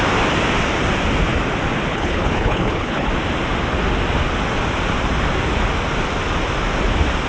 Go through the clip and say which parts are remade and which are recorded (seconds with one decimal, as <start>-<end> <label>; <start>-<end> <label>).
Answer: 0.0-1.9 recorded; 1.9-3.1 remade; 3.1-7.3 recorded